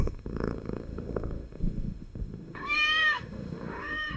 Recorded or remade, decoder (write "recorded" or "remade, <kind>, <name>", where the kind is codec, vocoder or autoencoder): remade, autoencoder, DAC-VAE